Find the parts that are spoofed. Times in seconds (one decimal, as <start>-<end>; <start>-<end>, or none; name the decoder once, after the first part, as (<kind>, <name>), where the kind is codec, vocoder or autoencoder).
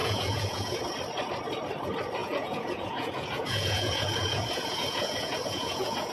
0.0-0.8 (vocoder, Vocos); 2.2-6.1